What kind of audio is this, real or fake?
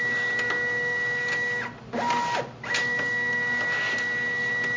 real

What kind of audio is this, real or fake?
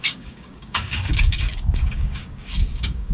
fake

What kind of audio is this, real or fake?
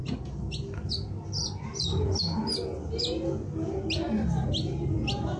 real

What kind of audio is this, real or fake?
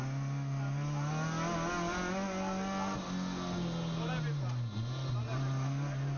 real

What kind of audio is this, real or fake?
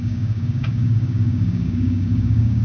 fake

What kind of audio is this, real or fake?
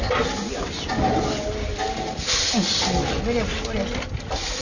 real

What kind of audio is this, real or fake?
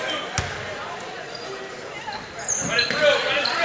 real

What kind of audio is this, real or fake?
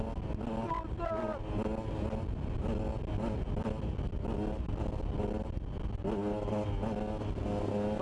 real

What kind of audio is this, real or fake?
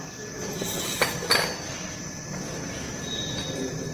real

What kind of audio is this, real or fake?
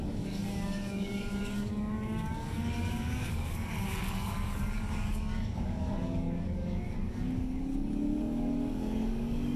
fake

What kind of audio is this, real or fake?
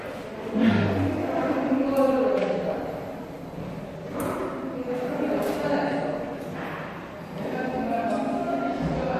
real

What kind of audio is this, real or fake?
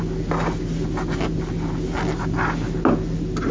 real